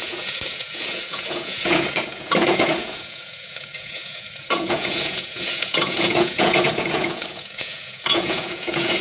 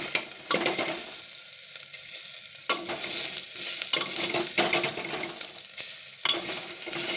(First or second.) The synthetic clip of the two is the first